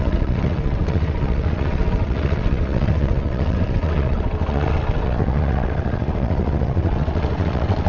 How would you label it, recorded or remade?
remade